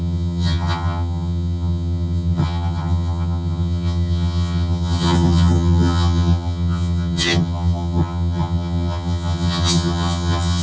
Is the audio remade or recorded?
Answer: remade